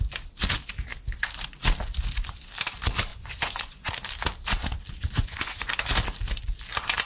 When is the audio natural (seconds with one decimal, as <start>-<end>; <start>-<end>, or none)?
0.0-3.1; 3.9-5.0; 5.7-7.1